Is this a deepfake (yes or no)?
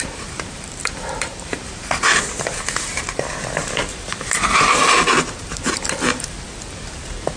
yes